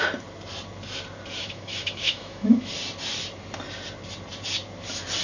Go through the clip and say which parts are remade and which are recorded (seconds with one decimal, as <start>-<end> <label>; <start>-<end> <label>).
0.0-1.4 recorded; 1.4-2.7 remade; 2.7-5.2 recorded